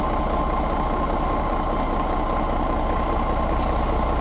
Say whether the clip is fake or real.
real